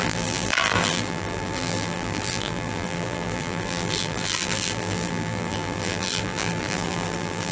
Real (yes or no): no